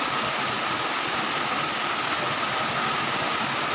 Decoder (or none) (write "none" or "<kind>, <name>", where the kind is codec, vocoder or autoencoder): none